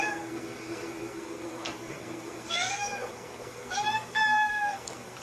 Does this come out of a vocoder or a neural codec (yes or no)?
yes